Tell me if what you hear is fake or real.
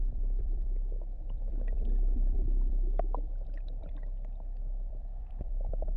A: fake